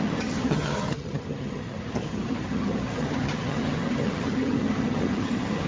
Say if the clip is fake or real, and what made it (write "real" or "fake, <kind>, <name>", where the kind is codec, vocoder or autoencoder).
fake, vocoder, HiFi-GAN